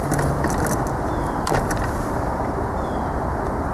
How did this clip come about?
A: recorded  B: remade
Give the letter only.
A